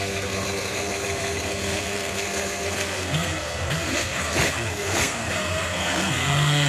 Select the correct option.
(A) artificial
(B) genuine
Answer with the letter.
A